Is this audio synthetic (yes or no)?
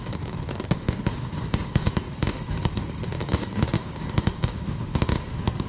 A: yes